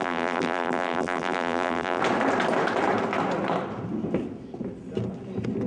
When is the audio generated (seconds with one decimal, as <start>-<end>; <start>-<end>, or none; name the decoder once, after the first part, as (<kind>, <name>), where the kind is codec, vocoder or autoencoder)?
0.0-2.0 (vocoder, BigVGAN v2)